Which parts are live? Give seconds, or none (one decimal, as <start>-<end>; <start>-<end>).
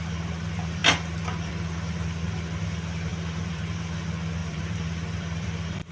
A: 0.0-3.1; 3.8-4.4